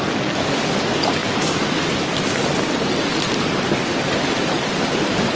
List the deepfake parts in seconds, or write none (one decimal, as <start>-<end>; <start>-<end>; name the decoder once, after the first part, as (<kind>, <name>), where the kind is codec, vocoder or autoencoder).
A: none